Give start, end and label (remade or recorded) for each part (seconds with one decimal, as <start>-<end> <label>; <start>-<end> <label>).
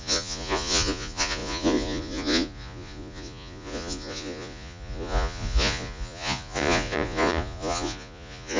0.0-8.6 remade